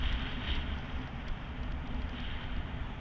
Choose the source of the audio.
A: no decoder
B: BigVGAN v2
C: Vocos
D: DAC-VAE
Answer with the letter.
A